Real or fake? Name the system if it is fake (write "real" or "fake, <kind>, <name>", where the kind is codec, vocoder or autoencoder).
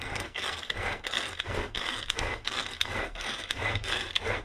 fake, codec, SNAC